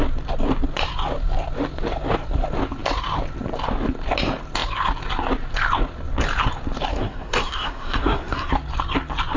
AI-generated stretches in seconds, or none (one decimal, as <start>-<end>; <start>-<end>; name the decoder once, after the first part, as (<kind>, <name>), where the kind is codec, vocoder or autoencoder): 6.9-8.5 (codec, SNAC)